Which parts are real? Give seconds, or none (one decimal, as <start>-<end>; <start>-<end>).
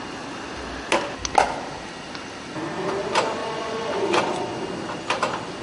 0.0-3.4; 4.5-5.6